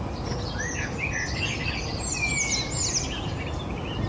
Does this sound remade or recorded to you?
recorded